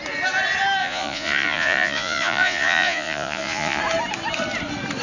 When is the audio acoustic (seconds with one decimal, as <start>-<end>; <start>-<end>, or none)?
0.0-0.8; 3.8-5.0